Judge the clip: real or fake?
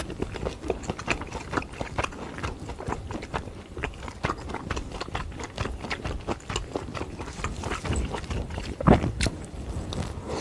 real